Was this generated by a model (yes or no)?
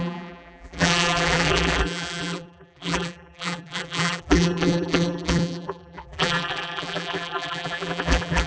yes